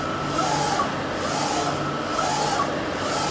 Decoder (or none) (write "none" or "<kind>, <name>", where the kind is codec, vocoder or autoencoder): none